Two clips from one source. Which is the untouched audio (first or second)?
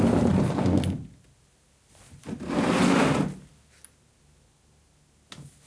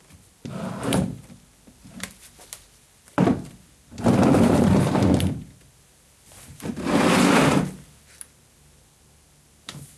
first